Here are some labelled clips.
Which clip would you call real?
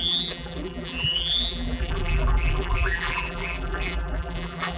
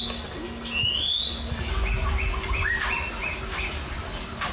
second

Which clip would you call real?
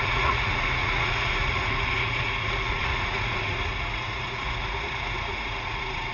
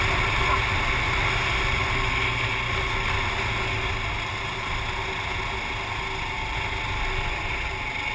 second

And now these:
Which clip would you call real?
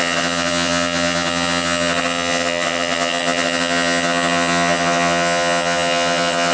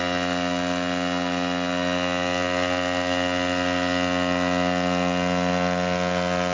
second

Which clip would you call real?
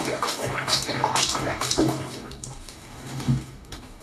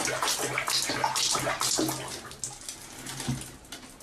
second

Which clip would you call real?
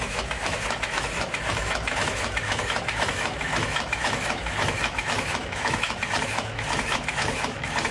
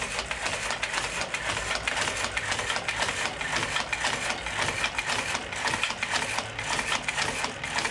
second